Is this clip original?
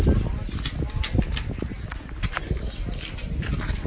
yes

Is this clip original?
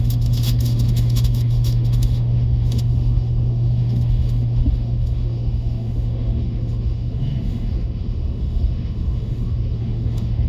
no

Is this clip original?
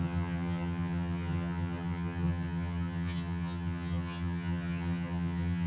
no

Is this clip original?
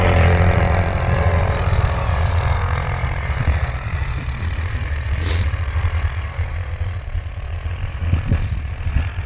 no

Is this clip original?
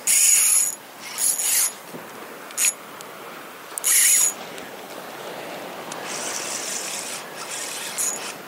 yes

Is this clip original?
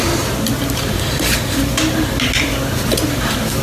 yes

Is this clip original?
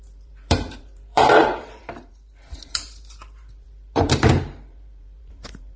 no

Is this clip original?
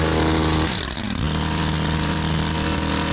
yes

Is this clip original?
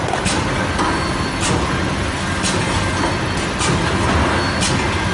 yes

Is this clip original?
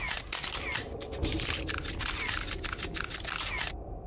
yes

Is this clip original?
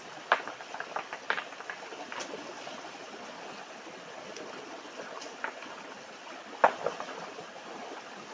yes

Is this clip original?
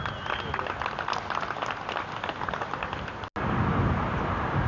yes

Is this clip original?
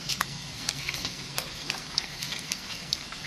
no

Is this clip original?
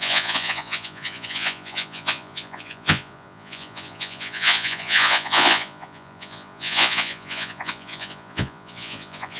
no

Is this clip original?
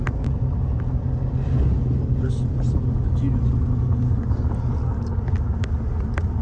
yes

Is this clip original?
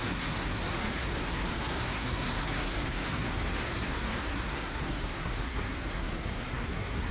no